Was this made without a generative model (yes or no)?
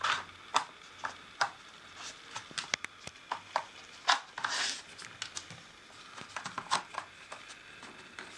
yes